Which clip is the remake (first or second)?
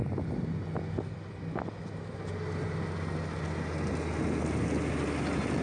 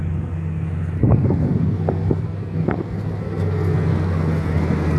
second